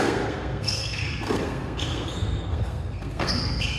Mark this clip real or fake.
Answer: fake